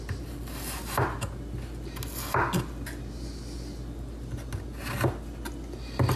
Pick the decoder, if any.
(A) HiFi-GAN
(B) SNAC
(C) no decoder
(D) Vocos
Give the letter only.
C